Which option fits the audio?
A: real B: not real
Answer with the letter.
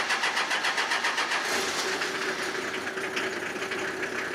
A